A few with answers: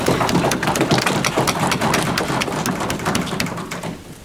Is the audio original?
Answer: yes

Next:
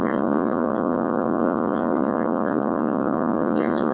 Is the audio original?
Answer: no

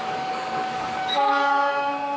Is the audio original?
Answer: no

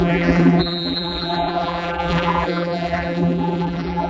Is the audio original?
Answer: no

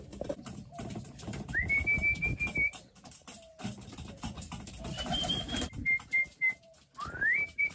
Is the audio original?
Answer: no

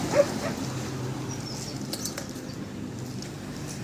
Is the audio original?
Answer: yes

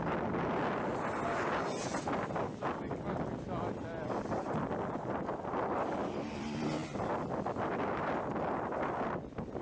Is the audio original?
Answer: yes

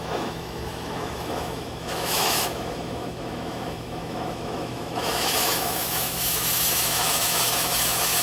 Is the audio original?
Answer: no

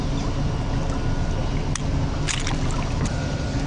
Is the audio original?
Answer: yes